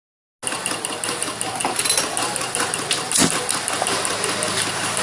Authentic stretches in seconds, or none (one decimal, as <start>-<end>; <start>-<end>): 0.0-5.0